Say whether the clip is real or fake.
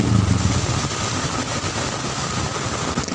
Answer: real